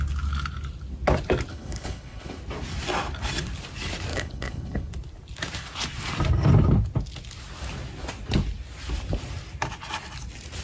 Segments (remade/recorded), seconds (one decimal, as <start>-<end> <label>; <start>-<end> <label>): 0.0-1.5 recorded; 1.5-2.4 remade; 2.4-4.1 recorded; 4.1-4.9 remade; 4.9-10.6 recorded